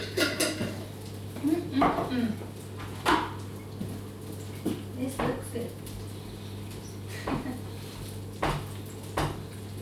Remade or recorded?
recorded